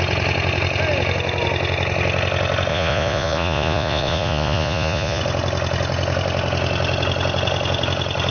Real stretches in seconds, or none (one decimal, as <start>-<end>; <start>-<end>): 0.0-2.7; 5.2-8.3